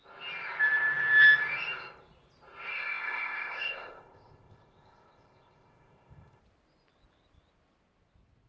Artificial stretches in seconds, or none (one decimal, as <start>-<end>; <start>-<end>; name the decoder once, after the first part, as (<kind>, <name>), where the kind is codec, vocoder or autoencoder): 2.7-6.4 (codec, ZipCodec)